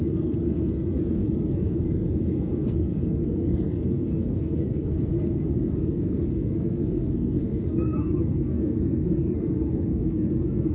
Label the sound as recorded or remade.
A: remade